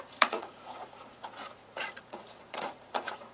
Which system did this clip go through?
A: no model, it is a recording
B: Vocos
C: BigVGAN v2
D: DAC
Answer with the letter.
B